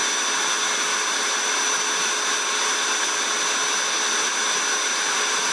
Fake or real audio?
real